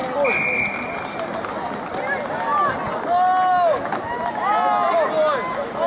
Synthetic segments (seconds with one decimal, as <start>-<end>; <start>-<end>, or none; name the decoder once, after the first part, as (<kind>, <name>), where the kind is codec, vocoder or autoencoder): none